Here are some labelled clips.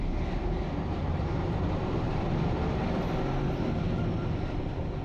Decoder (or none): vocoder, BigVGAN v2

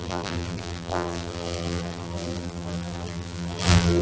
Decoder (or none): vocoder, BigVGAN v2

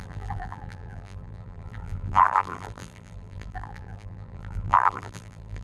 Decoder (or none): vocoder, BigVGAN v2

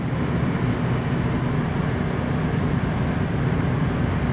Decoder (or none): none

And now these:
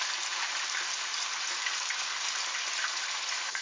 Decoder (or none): none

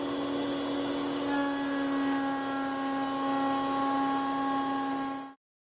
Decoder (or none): none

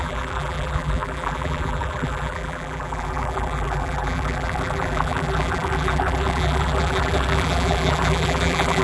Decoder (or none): vocoder, BigVGAN v2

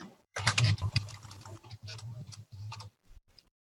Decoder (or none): vocoder, BigVGAN v2